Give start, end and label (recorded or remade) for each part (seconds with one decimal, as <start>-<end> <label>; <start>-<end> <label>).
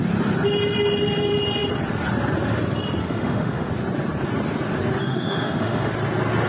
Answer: 0.0-3.0 recorded; 3.0-3.7 remade; 3.7-5.0 recorded; 5.0-5.9 remade; 5.9-6.5 recorded